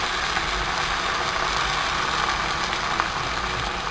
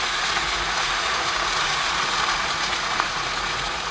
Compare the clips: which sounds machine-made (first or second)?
second